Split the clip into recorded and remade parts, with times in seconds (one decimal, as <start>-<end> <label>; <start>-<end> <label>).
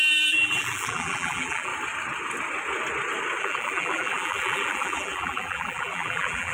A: 0.0-1.7 remade; 1.7-3.4 recorded; 3.4-6.5 remade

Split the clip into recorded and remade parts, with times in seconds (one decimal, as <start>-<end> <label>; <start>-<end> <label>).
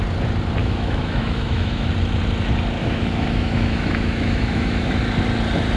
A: 0.0-0.6 recorded; 0.6-1.9 remade; 1.9-2.8 recorded; 2.8-5.0 remade; 5.0-5.8 recorded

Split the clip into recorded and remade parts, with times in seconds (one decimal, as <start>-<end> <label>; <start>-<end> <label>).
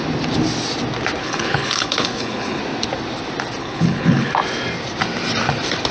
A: 0.0-1.2 recorded; 1.2-2.6 remade; 2.6-3.6 recorded; 3.6-4.3 remade; 4.3-5.9 recorded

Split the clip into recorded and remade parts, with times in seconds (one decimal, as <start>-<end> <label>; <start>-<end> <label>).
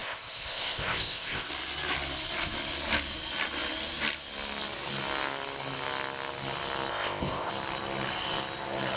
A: 0.0-1.5 remade; 1.5-6.9 recorded; 6.9-7.5 remade; 7.5-9.0 recorded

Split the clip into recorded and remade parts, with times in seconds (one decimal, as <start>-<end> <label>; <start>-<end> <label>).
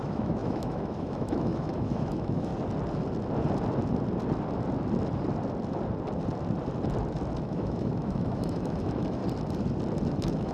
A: 0.0-2.5 remade; 2.5-7.4 recorded; 7.4-9.2 remade; 9.2-10.1 recorded; 10.1-10.5 remade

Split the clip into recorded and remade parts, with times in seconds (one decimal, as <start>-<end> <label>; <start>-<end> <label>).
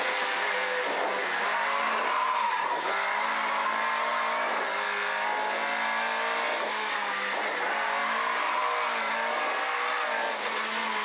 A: 0.0-11.0 recorded